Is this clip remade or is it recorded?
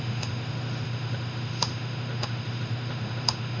remade